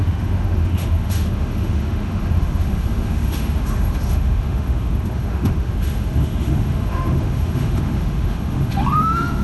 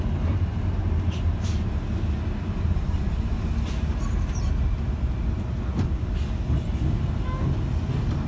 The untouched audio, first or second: second